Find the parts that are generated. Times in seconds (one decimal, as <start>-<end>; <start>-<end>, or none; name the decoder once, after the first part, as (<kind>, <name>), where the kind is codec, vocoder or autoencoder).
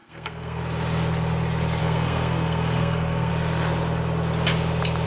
0.0-0.6 (codec, SNAC); 1.8-3.3